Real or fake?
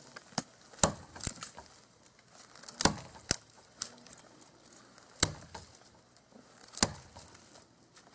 real